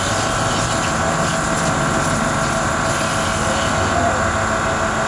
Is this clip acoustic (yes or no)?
yes